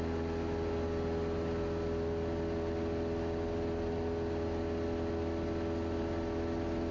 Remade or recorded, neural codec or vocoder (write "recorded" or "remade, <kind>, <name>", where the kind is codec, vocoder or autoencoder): recorded